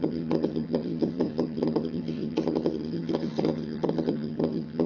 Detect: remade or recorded remade